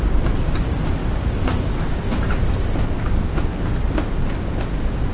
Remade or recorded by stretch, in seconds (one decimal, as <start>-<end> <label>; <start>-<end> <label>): 0.0-5.1 recorded